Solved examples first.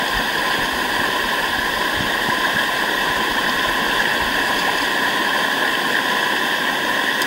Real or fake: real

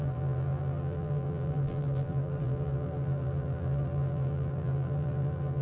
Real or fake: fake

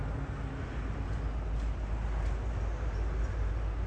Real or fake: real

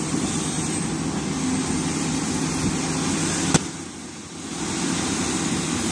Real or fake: real